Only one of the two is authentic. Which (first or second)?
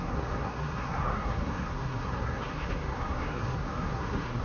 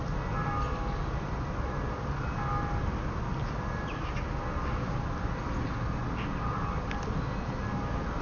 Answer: second